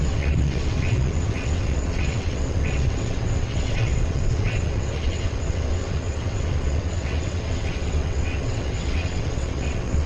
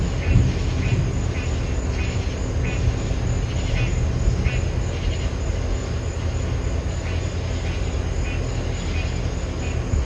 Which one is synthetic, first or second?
first